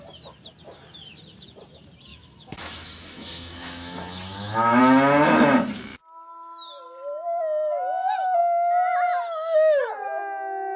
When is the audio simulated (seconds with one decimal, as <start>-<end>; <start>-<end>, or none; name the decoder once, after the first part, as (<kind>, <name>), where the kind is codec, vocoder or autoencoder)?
2.1-4.8 (autoencoder, DAC-VAE)